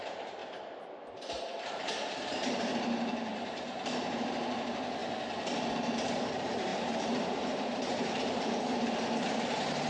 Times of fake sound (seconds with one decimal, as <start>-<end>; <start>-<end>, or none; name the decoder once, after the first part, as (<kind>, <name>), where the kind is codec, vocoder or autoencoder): 0.0-0.4 (vocoder, BigVGAN v2); 1.3-5.0; 5.7-9.9